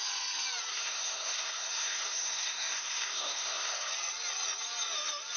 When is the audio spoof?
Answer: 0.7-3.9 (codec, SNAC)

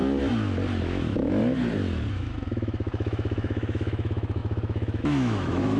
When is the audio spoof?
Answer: 0.8-1.4 (autoencoder, DAC-VAE); 2.1-5.8

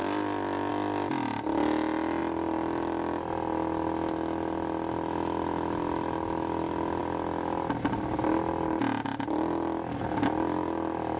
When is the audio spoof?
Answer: none

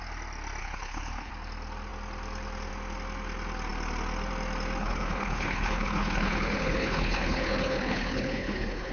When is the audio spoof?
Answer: 0.6-1.3 (codec, HILCodec); 4.8-8.9